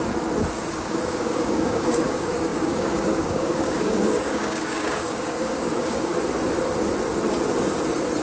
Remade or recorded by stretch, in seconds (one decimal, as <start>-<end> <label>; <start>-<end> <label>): 0.0-0.7 recorded; 0.7-6.1 remade; 6.1-8.2 recorded